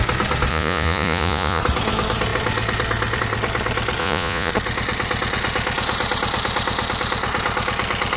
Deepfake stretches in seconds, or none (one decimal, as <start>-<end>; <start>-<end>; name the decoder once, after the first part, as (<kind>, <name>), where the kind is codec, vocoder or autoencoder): 0.5-1.6 (vocoder, Vocos); 4.0-4.5